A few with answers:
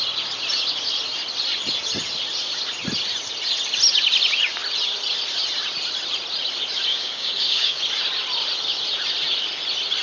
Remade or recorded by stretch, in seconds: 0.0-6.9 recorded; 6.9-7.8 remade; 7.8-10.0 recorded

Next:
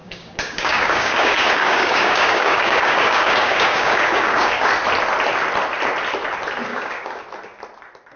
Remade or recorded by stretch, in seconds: 0.0-4.7 remade; 4.7-6.7 recorded; 6.7-7.2 remade; 7.2-8.2 recorded

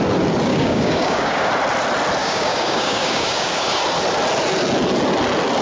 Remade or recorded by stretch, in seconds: 0.0-0.5 recorded; 0.5-1.5 remade; 1.5-2.2 recorded; 2.2-3.8 remade; 3.8-5.6 recorded

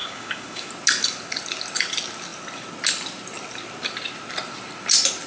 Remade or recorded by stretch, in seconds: 0.0-0.7 remade; 0.7-5.3 recorded